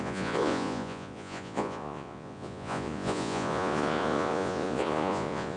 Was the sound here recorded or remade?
remade